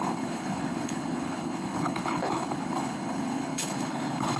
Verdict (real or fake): fake